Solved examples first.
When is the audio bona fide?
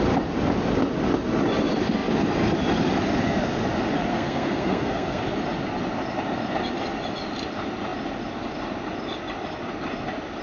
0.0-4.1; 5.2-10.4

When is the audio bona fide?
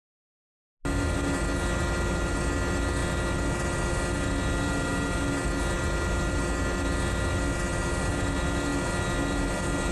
0.0-9.9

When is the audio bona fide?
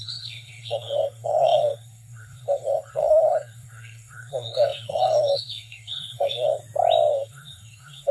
6.6-7.1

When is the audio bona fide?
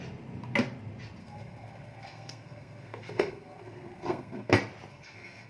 0.0-1.2; 4.5-4.9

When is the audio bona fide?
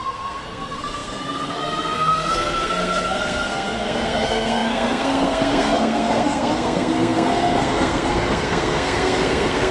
none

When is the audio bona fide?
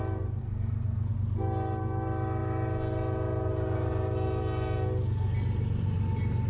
0.0-0.4; 1.1-6.5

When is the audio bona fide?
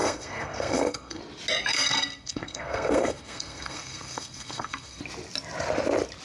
1.2-1.7; 5.0-6.2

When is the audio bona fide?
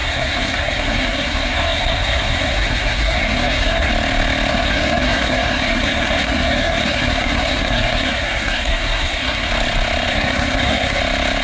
3.9-4.5; 9.5-10.1; 11.0-11.4